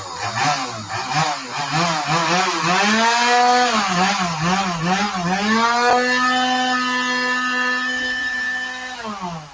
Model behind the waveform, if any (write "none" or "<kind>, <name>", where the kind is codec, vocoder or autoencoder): none